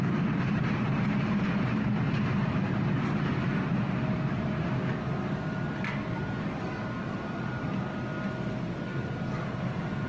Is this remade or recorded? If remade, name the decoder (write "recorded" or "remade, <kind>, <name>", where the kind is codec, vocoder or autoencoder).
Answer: recorded